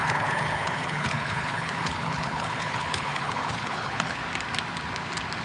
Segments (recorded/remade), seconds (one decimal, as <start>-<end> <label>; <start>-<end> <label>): 0.0-4.2 remade; 4.2-5.4 recorded